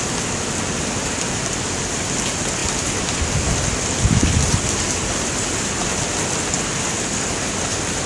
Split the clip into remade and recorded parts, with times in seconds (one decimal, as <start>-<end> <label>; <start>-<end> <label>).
0.0-8.1 recorded